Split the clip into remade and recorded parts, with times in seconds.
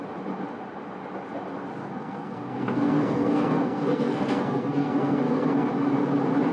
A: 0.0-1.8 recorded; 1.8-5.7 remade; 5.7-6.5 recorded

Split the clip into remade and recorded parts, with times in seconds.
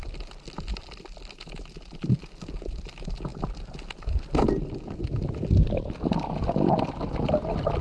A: 0.0-7.8 recorded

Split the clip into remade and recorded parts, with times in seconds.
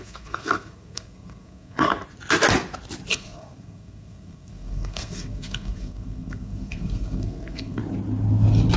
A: 0.0-1.9 remade; 1.9-3.1 recorded; 3.1-7.8 remade; 7.8-8.8 recorded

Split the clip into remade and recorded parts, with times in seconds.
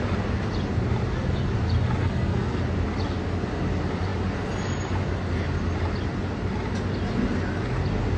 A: 0.0-2.0 recorded; 2.0-2.6 remade; 2.6-8.2 recorded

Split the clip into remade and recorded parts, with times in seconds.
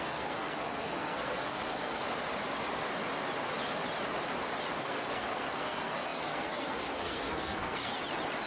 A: 0.0-2.0 remade; 2.0-4.8 recorded; 4.8-7.9 remade; 7.9-8.5 recorded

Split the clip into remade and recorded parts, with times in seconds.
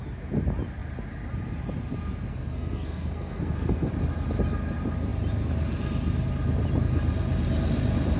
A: 0.0-2.3 recorded; 2.3-3.9 remade; 3.9-8.2 recorded